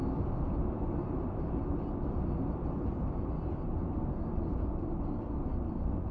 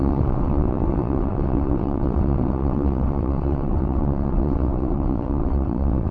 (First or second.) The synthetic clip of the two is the second